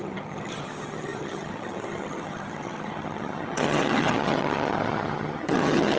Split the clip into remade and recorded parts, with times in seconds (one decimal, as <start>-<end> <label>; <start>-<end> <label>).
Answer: 0.0-6.0 remade